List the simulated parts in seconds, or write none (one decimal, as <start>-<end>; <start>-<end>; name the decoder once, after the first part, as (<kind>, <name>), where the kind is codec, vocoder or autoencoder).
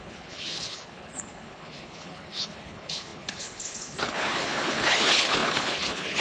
0.0-6.2 (codec, HILCodec)